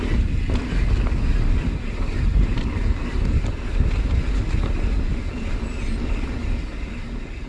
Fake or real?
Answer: real